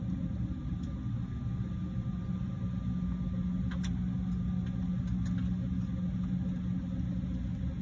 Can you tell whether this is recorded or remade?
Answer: recorded